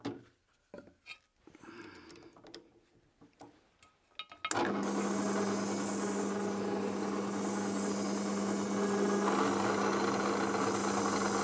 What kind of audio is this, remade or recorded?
recorded